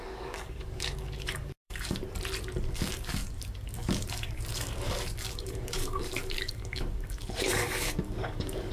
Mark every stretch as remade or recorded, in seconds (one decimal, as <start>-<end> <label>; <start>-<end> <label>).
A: 0.0-2.0 remade; 2.0-2.6 recorded; 2.6-8.7 remade